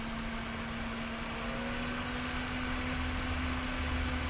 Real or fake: real